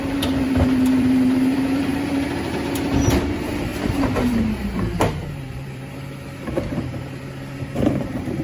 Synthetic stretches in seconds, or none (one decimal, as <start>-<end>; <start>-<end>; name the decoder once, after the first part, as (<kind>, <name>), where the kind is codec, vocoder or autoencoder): 0.0-8.4 (vocoder, BigVGAN v2)